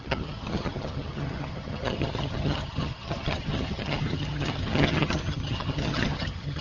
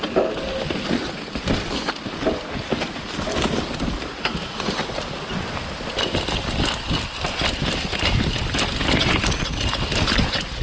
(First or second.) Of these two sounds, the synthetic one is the first